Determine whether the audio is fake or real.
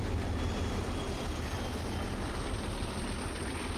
real